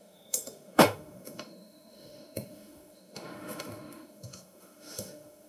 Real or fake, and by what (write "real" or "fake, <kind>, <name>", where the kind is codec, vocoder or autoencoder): fake, autoencoder, DAC-VAE